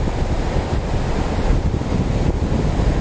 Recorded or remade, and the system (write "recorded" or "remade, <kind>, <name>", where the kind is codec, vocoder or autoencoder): recorded